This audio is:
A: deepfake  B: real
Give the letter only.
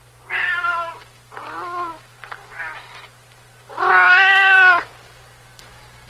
A